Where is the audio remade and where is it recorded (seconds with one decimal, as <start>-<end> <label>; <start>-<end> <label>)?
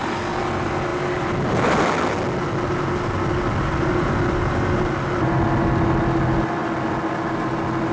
0.0-7.9 recorded